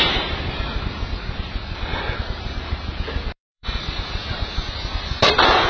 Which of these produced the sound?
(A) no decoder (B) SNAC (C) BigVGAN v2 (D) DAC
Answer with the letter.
C